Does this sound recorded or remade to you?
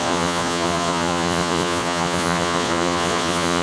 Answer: remade